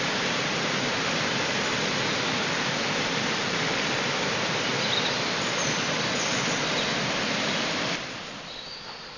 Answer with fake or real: fake